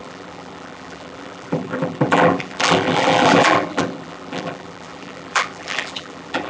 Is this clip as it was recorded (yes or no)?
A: no